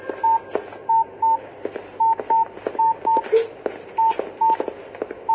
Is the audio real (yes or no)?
yes